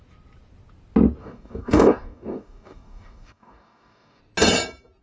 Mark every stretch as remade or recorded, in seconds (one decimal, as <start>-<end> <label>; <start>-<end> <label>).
0.0-1.2 recorded; 1.2-4.2 remade; 4.2-5.0 recorded